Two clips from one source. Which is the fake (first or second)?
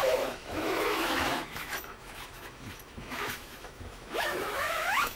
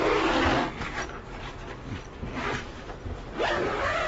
first